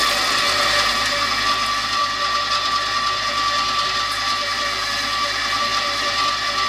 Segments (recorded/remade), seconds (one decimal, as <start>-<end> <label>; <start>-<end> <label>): 0.0-6.7 recorded